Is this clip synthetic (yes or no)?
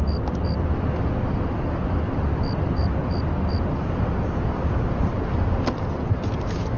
no